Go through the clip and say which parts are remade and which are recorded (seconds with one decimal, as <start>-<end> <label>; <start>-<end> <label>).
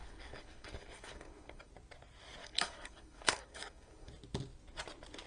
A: 0.0-1.7 remade; 1.7-2.4 recorded; 2.4-4.1 remade; 4.1-5.3 recorded